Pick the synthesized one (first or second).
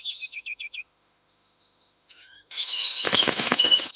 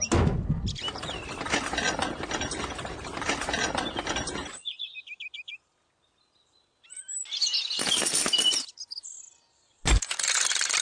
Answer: first